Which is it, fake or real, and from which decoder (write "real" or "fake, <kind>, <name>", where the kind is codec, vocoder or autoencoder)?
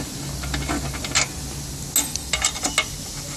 real